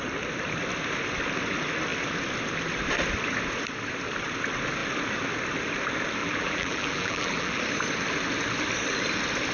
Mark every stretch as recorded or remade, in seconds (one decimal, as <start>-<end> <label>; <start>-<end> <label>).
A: 0.0-6.2 recorded; 6.2-7.6 remade; 7.6-9.5 recorded